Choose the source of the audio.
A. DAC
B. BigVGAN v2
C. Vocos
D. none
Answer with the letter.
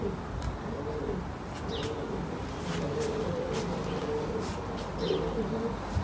D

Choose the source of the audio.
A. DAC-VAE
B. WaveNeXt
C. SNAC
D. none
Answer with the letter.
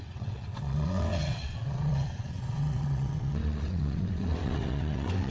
B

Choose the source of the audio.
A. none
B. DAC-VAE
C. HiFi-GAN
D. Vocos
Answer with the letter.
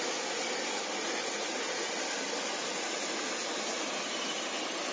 A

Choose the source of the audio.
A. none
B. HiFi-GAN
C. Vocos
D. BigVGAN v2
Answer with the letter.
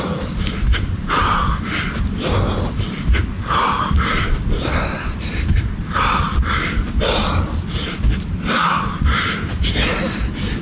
D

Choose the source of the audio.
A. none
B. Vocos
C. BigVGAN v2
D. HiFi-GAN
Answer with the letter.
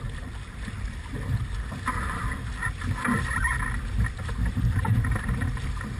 C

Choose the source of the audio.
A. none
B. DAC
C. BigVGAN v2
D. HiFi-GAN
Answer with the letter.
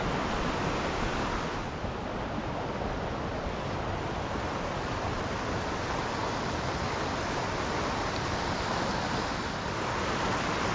A